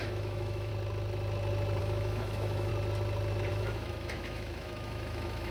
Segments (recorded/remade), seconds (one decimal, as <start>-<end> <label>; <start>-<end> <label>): 0.0-0.7 remade; 0.7-1.8 recorded; 1.8-2.7 remade; 2.7-3.5 recorded; 3.5-5.5 remade